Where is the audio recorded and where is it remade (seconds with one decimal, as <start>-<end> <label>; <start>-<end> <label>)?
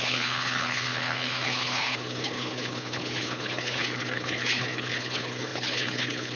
0.0-6.4 remade